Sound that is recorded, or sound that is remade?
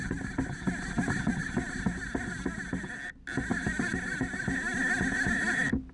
recorded